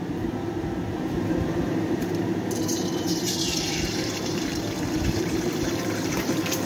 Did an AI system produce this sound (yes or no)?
yes